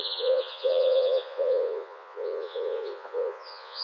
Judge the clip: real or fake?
fake